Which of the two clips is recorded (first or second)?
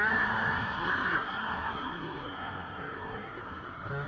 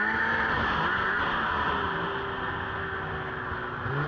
second